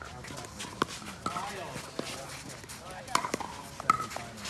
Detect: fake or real real